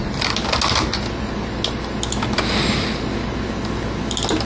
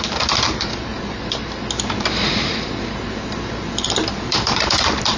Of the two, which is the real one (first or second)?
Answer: first